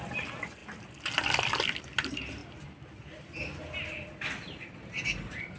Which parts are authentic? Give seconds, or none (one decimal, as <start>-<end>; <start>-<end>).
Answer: 0.0-5.6